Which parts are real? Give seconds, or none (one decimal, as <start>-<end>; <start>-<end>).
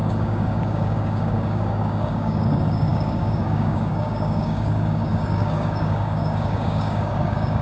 none